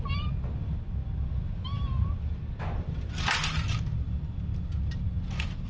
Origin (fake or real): real